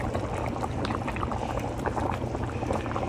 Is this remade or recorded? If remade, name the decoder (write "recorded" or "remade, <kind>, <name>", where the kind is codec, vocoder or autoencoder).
remade, vocoder, BigVGAN v2